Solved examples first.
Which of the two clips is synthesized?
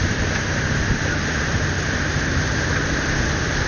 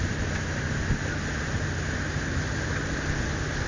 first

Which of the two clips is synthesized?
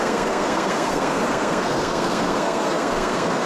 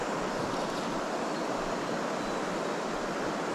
first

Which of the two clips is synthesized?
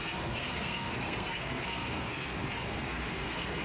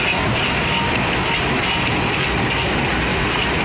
first